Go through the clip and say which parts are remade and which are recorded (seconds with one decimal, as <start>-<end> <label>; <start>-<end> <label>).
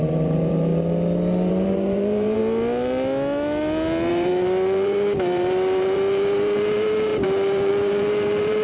0.0-0.7 remade; 0.7-1.5 recorded; 1.5-2.4 remade; 2.4-4.1 recorded; 4.1-8.6 remade